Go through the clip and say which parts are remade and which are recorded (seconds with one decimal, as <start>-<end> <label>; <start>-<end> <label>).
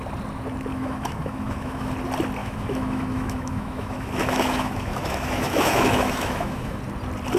0.0-0.7 recorded; 0.7-1.9 remade; 1.9-2.4 recorded; 2.4-6.8 remade; 6.8-7.4 recorded